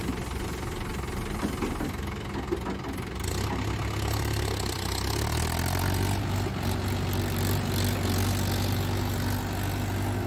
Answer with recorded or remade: recorded